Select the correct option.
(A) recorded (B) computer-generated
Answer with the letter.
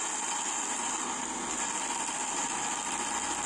A